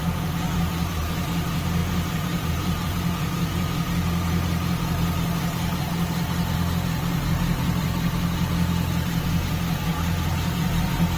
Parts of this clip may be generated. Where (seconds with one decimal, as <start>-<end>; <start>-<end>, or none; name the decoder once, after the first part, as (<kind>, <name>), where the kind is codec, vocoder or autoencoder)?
0.0-11.2 (vocoder, BigVGAN v2)